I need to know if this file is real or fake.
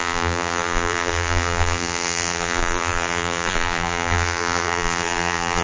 fake